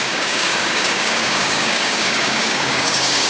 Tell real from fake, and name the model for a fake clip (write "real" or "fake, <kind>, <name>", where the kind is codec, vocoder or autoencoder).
fake, codec, DAC